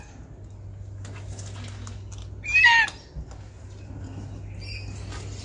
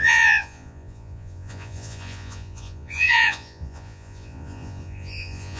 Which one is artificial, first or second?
second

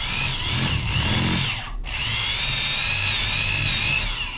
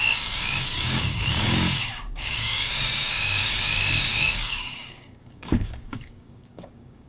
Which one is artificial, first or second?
second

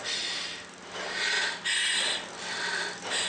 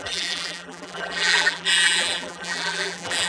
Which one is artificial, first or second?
second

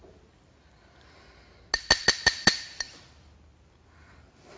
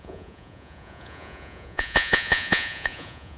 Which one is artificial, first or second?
second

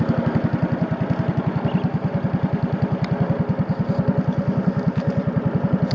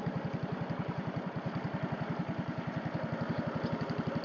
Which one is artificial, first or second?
second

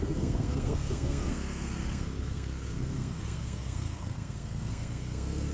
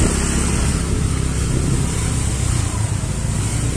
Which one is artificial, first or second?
first